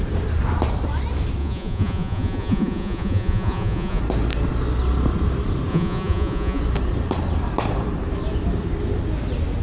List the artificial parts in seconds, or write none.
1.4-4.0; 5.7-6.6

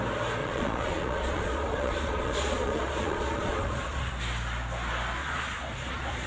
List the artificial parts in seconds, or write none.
0.4-4.2; 5.2-6.3

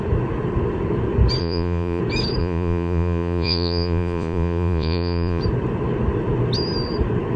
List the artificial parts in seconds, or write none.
1.4-2.0; 2.4-5.4

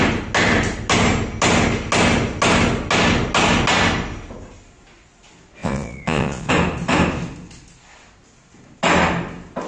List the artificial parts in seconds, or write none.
5.6-6.5

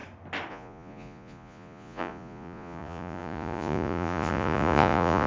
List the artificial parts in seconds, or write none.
0.5-5.3